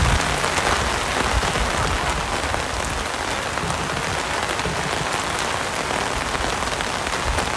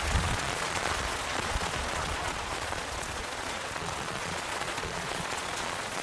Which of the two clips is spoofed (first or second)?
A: second